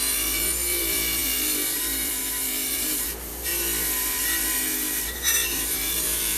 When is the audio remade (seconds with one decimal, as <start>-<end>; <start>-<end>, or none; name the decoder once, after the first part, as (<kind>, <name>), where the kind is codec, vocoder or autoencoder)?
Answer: 0.0-3.5 (vocoder, BigVGAN v2); 4.1-6.4